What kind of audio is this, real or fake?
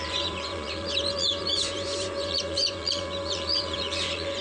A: fake